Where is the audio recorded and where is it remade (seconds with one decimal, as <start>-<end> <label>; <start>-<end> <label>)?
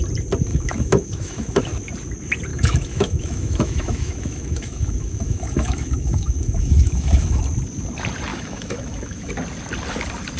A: 0.0-0.5 recorded; 0.5-1.6 remade; 1.6-2.5 recorded; 2.5-7.4 remade; 7.4-8.3 recorded; 8.3-9.3 remade; 9.3-10.4 recorded